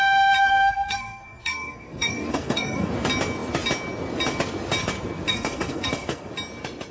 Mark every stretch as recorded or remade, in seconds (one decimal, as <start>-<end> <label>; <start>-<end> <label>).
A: 0.0-0.4 recorded; 0.4-2.9 remade; 2.9-5.3 recorded; 5.3-6.3 remade; 6.3-6.9 recorded